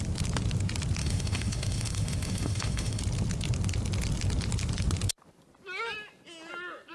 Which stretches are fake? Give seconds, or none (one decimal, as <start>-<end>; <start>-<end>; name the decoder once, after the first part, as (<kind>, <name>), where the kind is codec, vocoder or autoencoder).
1.0-3.0 (autoencoder, DAC-VAE)